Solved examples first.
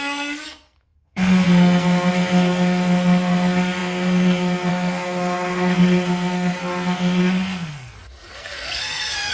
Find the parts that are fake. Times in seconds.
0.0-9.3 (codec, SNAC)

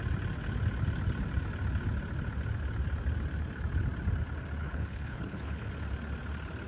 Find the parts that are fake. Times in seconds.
4.6-5.7 (codec, HILCodec)

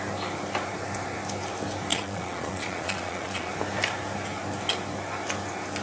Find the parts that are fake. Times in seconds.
1.9-3.5 (vocoder, Vocos)

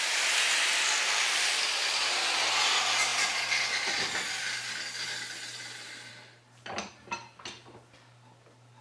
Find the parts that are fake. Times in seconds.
none

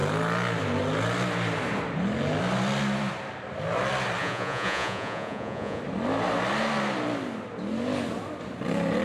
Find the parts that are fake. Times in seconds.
4.2-5.8 (vocoder, Vocos)

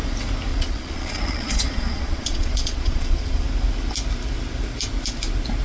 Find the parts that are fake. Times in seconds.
0.5-3.4 (vocoder, Vocos)

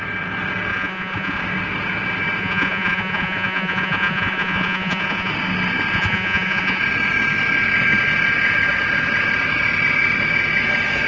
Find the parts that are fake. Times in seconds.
0.7-1.4 (vocoder, Vocos); 2.4-5.3; 5.9-6.8